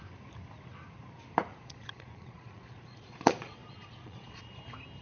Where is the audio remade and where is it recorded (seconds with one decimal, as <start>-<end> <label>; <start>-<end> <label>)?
0.0-1.5 recorded; 1.5-4.5 remade; 4.5-5.0 recorded